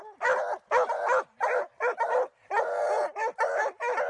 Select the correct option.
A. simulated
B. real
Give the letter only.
B